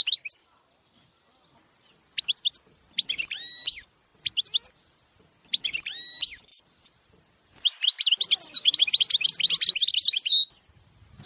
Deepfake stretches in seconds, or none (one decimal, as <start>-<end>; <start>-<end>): none